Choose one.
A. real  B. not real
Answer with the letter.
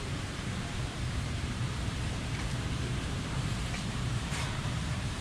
B